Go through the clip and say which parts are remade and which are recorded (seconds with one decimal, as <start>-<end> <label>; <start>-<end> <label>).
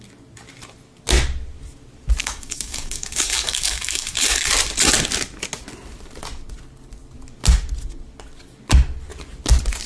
0.0-2.2 recorded; 2.2-4.5 remade; 4.5-9.9 recorded